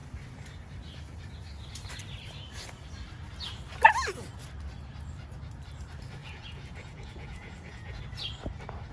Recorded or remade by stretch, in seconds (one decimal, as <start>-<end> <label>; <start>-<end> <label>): 0.0-6.2 recorded; 6.2-8.0 remade; 8.0-8.9 recorded